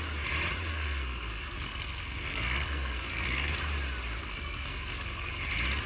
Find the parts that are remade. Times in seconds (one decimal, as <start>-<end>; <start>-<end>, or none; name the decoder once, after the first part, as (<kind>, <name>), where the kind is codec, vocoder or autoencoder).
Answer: 0.7-3.5 (codec, SNAC); 4.2-5.3

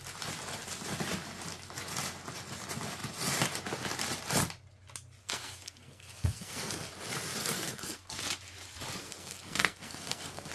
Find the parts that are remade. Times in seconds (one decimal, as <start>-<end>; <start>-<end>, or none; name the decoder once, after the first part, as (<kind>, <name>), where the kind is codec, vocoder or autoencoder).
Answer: 5.2-6.9 (codec, SNAC); 7.4-8.2; 9.0-10.5

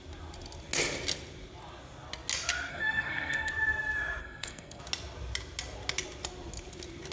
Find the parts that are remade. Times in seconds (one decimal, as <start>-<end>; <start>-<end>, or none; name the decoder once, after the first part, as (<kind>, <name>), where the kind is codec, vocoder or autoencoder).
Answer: 2.7-3.5 (codec, SNAC); 4.2-4.8

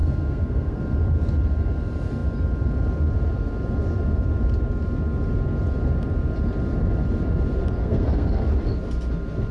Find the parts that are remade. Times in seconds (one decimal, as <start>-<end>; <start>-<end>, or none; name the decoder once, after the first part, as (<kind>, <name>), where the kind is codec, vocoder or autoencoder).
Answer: 0.0-0.8 (codec, SNAC); 7.8-8.5

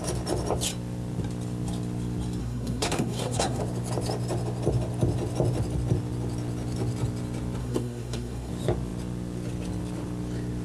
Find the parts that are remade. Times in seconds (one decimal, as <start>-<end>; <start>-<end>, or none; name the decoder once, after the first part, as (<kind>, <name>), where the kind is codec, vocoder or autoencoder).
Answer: 2.4-3.6 (codec, SNAC); 7.6-8.5